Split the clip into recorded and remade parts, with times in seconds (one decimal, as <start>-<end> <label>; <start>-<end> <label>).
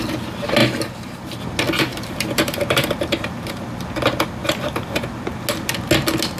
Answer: 0.0-0.6 recorded; 0.6-1.4 remade; 1.4-1.9 recorded; 1.9-3.6 remade; 3.6-4.4 recorded; 4.4-5.1 remade; 5.1-6.4 recorded